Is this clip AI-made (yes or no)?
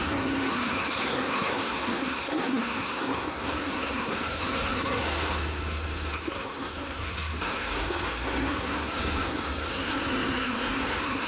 yes